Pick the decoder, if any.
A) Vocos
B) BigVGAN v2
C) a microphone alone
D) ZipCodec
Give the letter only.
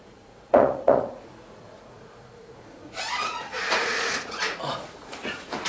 A